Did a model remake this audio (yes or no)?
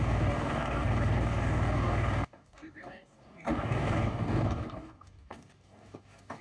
yes